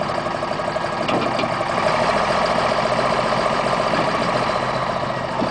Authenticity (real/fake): real